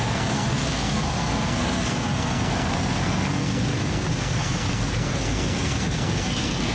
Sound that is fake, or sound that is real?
fake